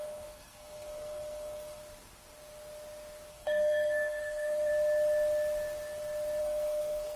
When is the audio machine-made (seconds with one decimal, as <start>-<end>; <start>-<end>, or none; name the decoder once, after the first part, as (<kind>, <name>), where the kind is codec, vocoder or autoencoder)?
0.0-1.8 (codec, SNAC); 3.3-4.7; 6.4-7.2